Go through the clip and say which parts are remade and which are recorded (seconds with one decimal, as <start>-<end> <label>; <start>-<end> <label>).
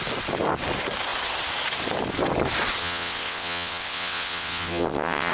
0.0-2.8 recorded; 2.8-5.3 remade